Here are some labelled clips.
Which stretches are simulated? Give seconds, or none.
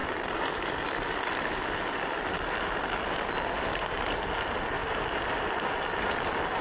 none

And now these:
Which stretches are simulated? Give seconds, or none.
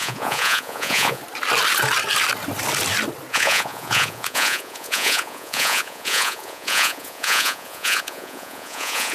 0.0-1.2 (vocoder, Vocos); 3.3-9.1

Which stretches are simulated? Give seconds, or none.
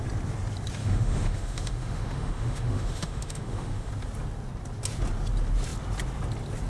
0.8-3.9 (autoencoder, DAC-VAE)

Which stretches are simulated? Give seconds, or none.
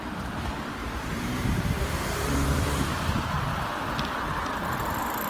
0.8-3.5 (vocoder, BigVGAN v2)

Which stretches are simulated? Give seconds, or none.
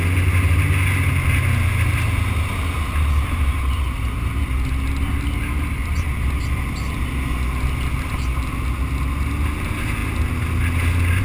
none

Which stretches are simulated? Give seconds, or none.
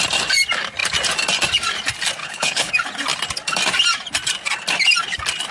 2.2-2.7 (codec, HILCodec)